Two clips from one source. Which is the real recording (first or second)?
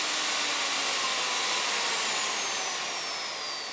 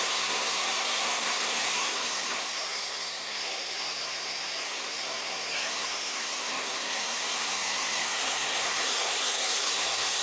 first